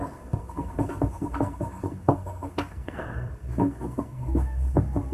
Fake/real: fake